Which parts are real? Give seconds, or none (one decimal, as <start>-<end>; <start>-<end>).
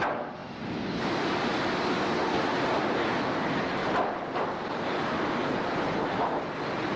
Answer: 0.0-7.0